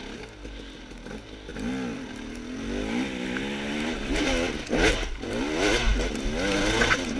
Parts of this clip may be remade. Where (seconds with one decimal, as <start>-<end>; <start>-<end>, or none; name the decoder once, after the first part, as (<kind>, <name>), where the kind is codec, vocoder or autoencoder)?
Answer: none